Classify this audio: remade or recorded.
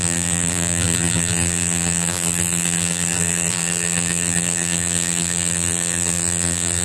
remade